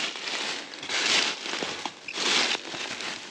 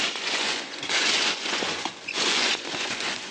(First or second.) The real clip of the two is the first